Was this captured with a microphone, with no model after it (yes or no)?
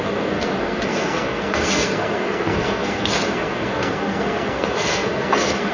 no